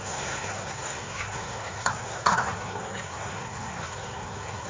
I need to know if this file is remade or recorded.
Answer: remade